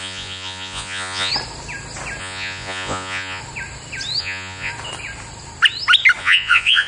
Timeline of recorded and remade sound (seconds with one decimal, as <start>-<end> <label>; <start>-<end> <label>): 0.0-1.3 remade; 1.3-2.2 recorded; 2.2-3.4 remade; 3.4-4.2 recorded; 4.2-4.7 remade; 4.7-6.2 recorded; 6.2-6.9 remade